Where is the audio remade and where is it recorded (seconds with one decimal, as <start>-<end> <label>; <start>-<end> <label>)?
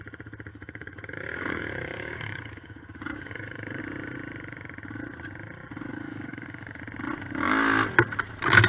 0.0-0.5 recorded; 0.5-3.8 remade; 3.8-5.9 recorded; 5.9-6.8 remade; 6.8-8.7 recorded